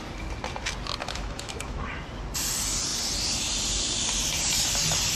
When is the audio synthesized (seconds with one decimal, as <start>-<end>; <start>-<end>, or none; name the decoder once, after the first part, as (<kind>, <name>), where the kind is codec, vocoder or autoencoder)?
1.0-1.8 (autoencoder, DAC-VAE)